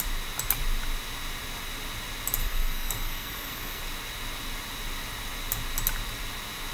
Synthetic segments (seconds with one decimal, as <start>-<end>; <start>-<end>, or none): 2.4-3.8